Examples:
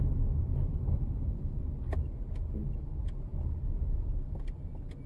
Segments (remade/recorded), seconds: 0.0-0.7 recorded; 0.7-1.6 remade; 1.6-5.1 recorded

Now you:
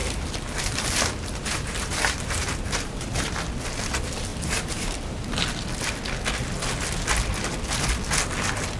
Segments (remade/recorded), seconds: 0.0-3.5 remade; 3.5-4.3 recorded; 4.3-5.4 remade; 5.4-8.8 recorded

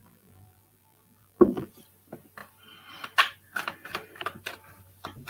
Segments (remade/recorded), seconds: 0.0-1.7 remade; 1.7-5.3 recorded

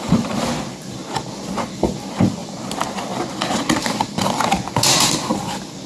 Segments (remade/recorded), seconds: 0.0-5.9 recorded

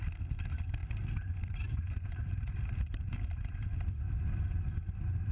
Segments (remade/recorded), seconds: 0.0-0.8 recorded; 0.8-4.0 remade; 4.0-5.3 recorded